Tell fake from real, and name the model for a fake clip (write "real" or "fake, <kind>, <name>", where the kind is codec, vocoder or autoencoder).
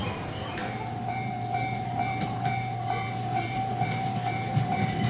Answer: fake, vocoder, BigVGAN v2